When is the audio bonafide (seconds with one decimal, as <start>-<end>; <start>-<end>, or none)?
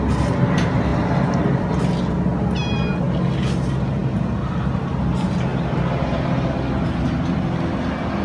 0.0-8.2